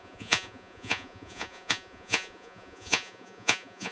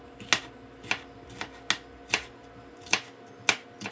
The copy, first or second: first